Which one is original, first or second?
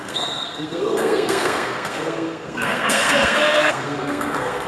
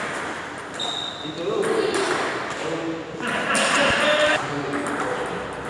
second